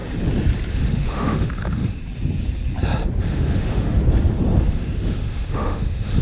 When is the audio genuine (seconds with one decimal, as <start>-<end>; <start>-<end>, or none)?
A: 0.0-0.7; 2.0-3.2; 4.0-4.7